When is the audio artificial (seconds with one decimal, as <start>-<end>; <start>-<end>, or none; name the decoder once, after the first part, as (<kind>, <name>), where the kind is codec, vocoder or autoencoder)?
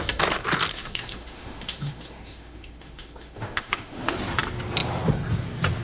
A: 0.7-4.2 (autoencoder, DAC-VAE)